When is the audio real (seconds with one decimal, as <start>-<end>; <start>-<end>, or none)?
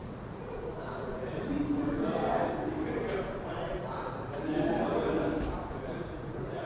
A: 2.2-3.2; 4.5-5.7